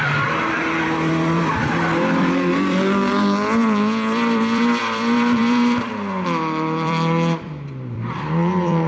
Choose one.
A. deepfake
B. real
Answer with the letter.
A